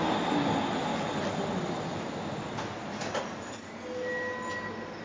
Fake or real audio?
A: real